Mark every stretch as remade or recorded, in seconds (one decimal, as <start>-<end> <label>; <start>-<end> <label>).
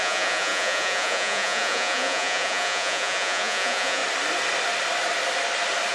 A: 0.0-4.0 remade; 4.0-5.9 recorded